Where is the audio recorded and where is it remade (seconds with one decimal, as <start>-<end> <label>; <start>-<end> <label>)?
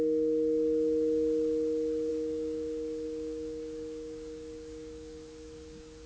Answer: 0.0-2.1 recorded; 2.1-6.1 remade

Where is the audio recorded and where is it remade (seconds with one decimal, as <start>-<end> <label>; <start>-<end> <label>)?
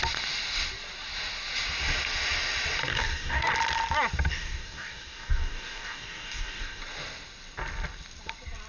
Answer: 0.0-2.9 recorded; 2.9-3.5 remade; 3.5-4.3 recorded; 4.3-6.8 remade; 6.8-8.7 recorded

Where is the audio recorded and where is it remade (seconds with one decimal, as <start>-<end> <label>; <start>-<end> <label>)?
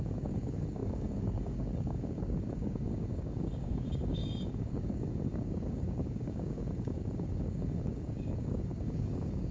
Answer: 0.0-9.5 remade